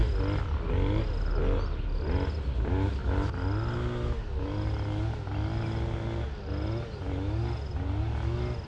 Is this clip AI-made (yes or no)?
no